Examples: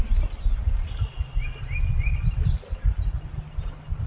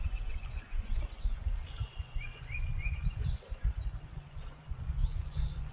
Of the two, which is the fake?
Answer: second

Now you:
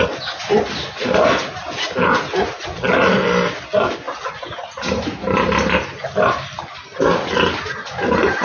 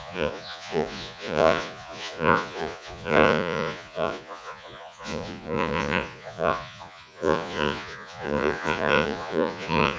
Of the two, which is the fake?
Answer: second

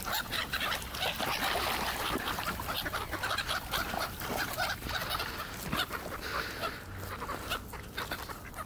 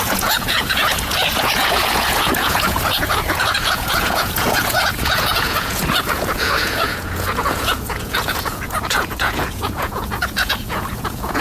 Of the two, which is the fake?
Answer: second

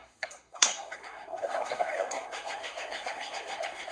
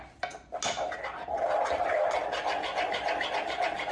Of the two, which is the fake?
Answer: first